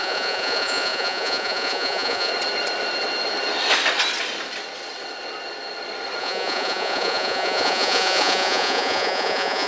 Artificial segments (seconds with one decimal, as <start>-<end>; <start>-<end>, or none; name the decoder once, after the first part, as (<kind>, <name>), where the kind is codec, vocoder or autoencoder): 0.0-2.3 (vocoder, Vocos); 6.2-9.7